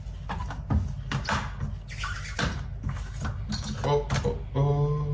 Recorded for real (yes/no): yes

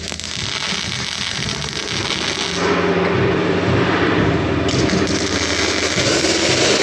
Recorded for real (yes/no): yes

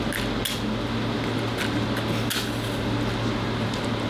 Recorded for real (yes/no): yes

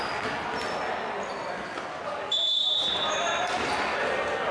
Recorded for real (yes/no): yes